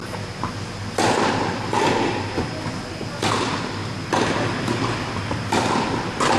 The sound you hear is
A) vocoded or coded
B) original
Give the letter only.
B